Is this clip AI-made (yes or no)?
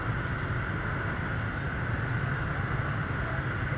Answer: no